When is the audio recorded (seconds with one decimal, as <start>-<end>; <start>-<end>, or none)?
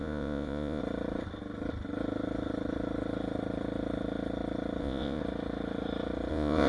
0.8-4.8; 5.2-6.3